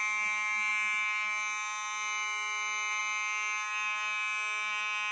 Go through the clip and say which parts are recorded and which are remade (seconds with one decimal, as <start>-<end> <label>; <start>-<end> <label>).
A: 0.0-5.1 recorded